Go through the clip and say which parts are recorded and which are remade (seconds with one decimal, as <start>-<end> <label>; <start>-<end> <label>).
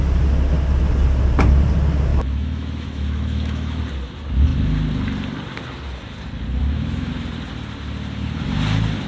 0.0-2.1 recorded; 2.1-3.8 remade; 3.8-6.6 recorded; 6.6-7.1 remade; 7.1-9.1 recorded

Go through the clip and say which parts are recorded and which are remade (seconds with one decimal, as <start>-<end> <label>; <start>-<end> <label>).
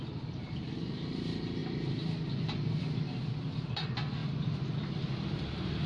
0.0-5.9 recorded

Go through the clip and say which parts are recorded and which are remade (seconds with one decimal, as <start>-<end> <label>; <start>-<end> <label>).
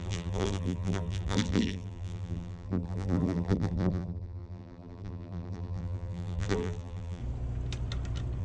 0.0-7.2 remade; 7.2-8.4 recorded